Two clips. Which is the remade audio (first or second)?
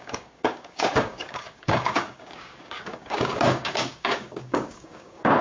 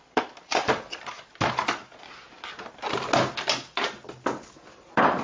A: first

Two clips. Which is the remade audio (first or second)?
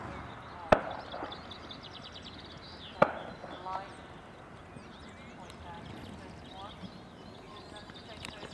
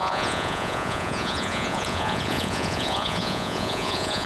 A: second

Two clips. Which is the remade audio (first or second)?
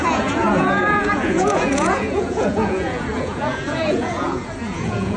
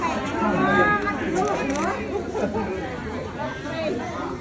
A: first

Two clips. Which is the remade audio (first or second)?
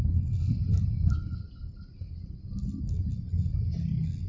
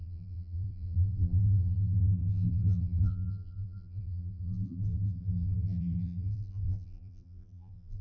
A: second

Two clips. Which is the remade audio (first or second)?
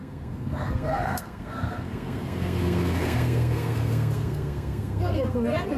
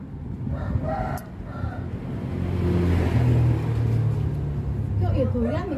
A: first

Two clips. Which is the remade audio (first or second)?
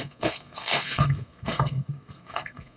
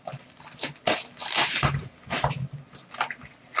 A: first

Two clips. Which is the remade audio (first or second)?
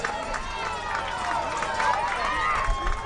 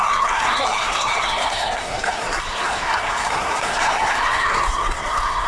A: second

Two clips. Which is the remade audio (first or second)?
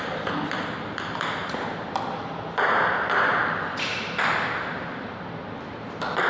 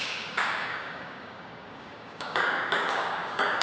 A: second